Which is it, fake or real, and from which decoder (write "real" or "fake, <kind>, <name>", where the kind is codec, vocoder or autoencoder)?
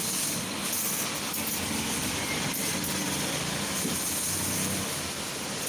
real